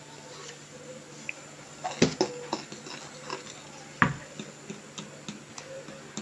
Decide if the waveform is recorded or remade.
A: recorded